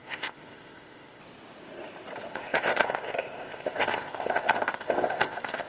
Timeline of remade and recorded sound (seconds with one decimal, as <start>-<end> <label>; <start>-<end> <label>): 0.0-1.2 remade; 1.2-2.3 recorded; 2.3-5.7 remade